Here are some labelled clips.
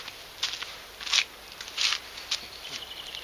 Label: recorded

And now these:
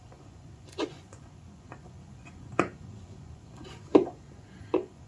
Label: remade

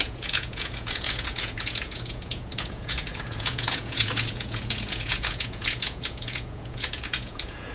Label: remade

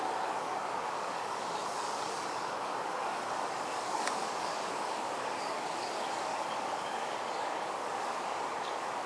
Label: remade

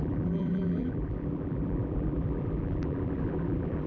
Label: remade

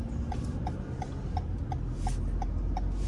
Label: recorded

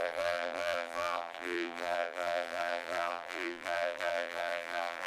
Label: remade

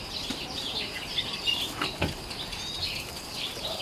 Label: recorded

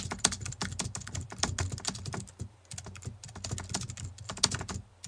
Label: recorded